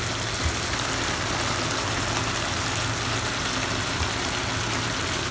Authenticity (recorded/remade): recorded